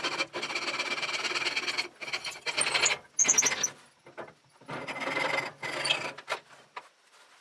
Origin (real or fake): real